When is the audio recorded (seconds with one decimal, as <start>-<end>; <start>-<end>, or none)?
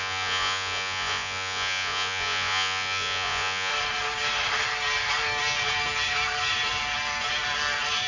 3.7-8.1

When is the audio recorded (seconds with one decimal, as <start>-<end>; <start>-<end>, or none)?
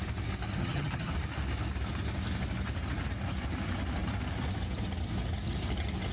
0.0-0.6; 1.1-6.1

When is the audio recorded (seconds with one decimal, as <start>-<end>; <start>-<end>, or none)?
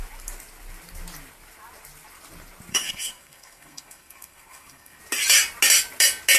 0.0-2.7; 5.0-6.4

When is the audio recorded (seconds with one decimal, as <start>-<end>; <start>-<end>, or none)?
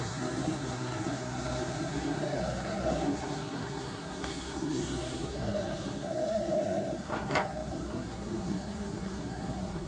none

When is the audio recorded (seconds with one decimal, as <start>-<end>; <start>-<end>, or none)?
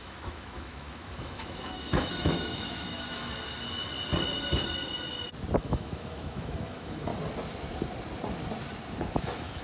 3.2-5.6; 7.1-9.2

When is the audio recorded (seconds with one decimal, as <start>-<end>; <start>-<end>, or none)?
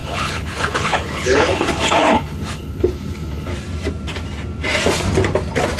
3.5-5.8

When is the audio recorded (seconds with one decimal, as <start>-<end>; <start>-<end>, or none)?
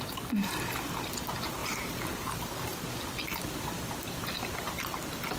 0.0-1.6; 4.8-5.4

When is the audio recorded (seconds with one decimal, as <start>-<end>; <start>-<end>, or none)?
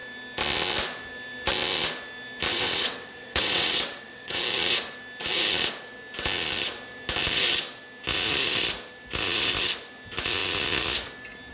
0.0-2.5; 4.4-11.5